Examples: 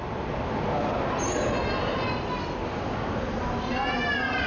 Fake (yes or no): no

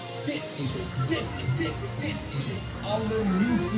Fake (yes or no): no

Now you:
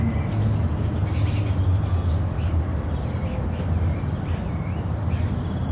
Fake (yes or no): no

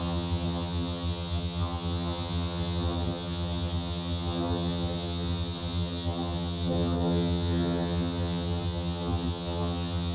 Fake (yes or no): yes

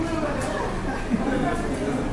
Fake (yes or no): no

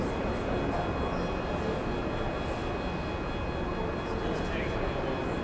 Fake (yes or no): no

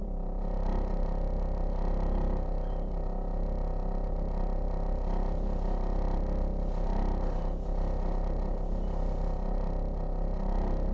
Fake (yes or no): yes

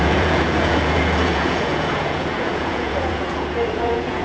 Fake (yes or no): yes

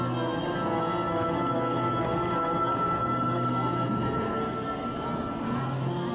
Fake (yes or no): no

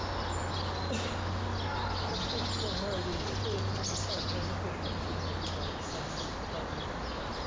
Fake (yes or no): no